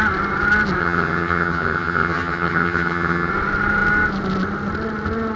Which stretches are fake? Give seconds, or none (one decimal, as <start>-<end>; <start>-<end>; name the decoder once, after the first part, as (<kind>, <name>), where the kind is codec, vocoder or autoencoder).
0.8-3.3 (vocoder, HiFi-GAN)